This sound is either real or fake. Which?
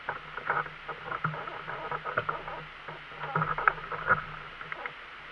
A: real